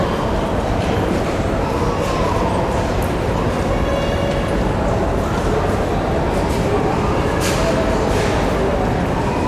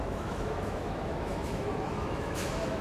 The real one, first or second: first